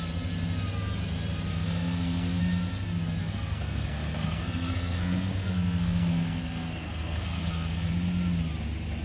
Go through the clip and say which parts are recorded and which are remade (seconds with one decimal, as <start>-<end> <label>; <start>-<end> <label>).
0.0-1.5 recorded; 1.5-2.4 remade; 2.4-3.2 recorded; 3.2-7.9 remade; 7.9-9.0 recorded